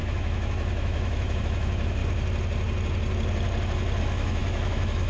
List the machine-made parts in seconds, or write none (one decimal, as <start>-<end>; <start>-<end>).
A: 0.0-2.0; 4.0-5.1